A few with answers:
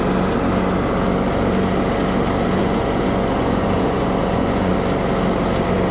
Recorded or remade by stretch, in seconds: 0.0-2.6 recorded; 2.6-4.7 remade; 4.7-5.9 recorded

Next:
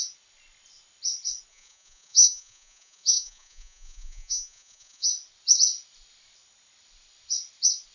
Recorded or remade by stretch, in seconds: 0.0-1.5 recorded; 1.5-5.1 remade; 5.1-7.9 recorded

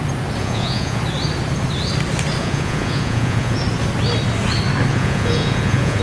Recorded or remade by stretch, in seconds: 0.0-0.4 recorded; 0.4-1.0 remade; 1.0-2.4 recorded; 2.4-3.6 remade; 3.6-4.9 recorded; 4.9-6.0 remade

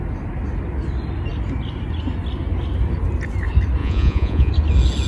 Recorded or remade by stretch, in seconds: 0.0-3.8 recorded; 3.8-4.5 remade; 4.5-5.1 recorded